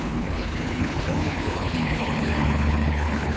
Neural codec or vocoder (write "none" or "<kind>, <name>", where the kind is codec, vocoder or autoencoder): codec, HILCodec